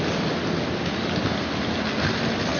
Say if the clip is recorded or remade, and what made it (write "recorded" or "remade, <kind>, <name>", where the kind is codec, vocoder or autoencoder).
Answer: recorded